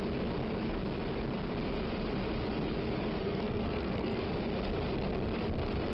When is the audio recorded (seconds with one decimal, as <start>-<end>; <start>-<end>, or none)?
0.0-3.2; 4.2-5.9